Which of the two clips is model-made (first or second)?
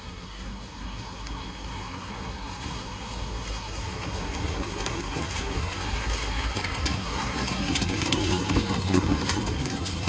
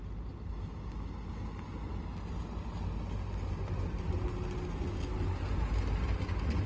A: first